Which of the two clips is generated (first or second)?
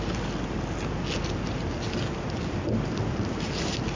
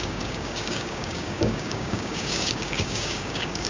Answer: second